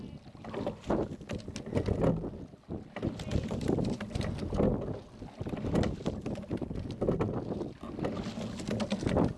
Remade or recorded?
recorded